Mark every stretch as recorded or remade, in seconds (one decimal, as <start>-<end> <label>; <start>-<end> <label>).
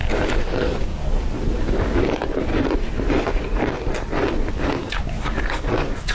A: 0.0-1.0 remade; 1.0-1.6 recorded; 1.6-2.5 remade; 2.5-4.5 recorded; 4.5-6.1 remade